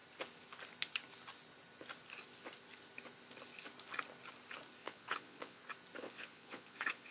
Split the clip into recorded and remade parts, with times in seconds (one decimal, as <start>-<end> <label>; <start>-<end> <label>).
0.0-4.8 recorded; 4.8-5.6 remade; 5.6-6.0 recorded; 6.0-7.1 remade